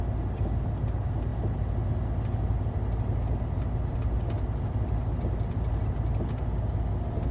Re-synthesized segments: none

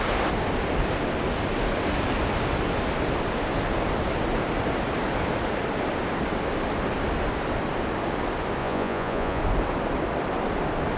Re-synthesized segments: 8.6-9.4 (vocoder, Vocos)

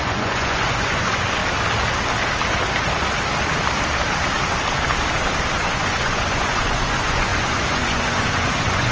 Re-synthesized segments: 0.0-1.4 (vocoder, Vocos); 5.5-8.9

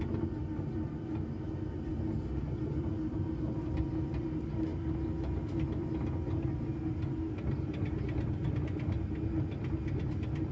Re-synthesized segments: none

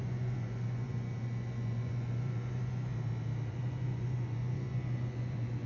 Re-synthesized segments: 0.0-2.9 (vocoder, Vocos); 3.5-5.7